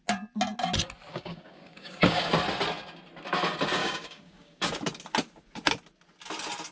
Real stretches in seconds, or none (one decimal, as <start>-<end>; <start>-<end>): 0.0-1.1; 2.3-3.8; 4.6-6.7